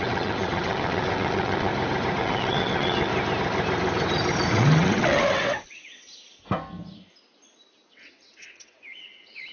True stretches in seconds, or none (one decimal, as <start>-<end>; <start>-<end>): 1.7-2.2; 3.1-4.5; 6.0-7.9

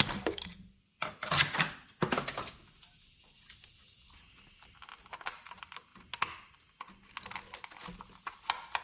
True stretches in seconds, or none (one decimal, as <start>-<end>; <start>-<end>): 0.0-8.8